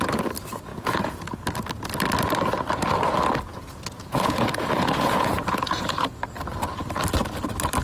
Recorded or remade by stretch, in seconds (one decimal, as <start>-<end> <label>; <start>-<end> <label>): 0.0-0.7 recorded; 0.7-1.3 remade; 1.3-3.5 recorded; 3.5-6.1 remade; 6.1-7.8 recorded